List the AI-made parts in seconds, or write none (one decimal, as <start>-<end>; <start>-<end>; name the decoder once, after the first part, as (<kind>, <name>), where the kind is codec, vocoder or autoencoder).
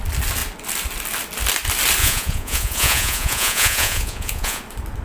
2.0-4.6 (vocoder, Vocos)